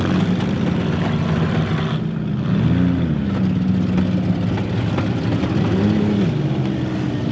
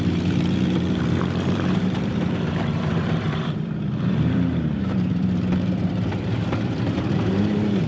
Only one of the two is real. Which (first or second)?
first